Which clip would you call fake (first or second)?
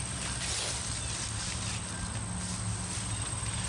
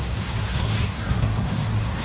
second